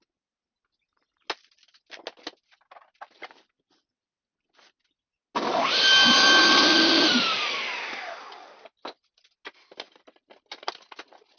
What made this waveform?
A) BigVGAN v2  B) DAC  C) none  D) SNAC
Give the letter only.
C